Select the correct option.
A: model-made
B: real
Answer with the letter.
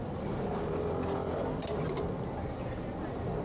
B